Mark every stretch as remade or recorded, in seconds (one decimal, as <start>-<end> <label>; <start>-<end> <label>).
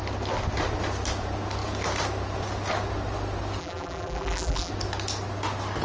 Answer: 0.0-3.6 recorded; 3.6-4.7 remade; 4.7-5.8 recorded